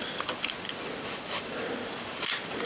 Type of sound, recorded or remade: recorded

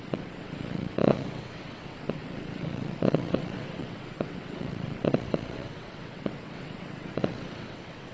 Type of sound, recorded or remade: remade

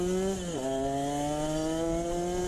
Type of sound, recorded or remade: recorded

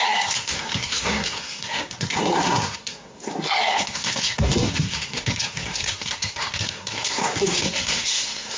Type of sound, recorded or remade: remade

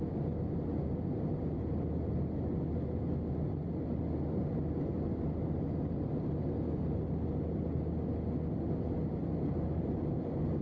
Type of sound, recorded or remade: recorded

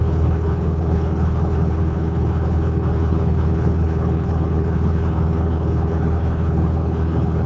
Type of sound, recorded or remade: remade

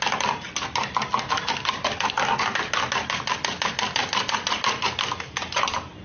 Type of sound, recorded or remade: recorded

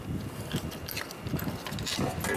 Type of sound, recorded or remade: recorded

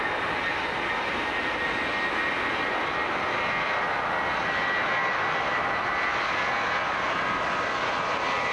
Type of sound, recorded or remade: recorded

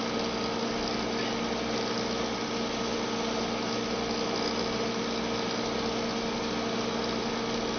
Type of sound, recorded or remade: recorded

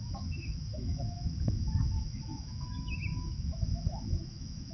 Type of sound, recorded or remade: remade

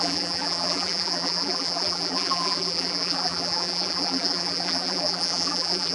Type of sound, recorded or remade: remade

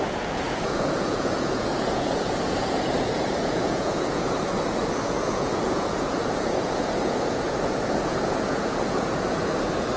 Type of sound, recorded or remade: remade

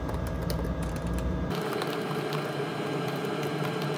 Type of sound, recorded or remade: remade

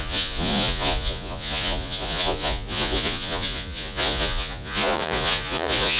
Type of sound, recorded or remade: remade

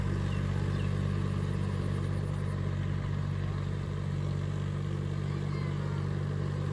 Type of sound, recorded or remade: recorded